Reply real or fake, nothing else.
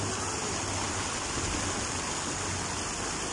real